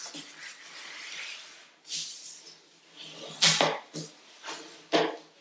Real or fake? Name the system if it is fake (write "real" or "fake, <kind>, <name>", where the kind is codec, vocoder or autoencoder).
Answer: real